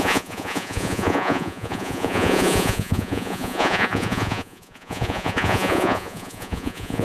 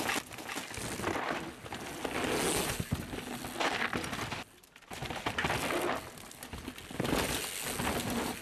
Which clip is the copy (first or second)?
first